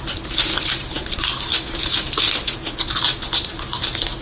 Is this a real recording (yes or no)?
yes